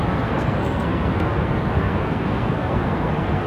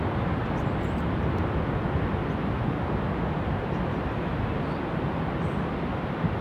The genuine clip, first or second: second